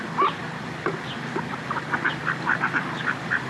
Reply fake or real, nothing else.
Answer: real